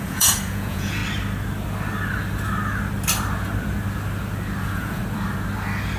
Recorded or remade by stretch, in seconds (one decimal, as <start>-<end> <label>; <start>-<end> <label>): 0.0-1.0 remade; 1.0-4.6 recorded; 4.6-5.0 remade; 5.0-6.0 recorded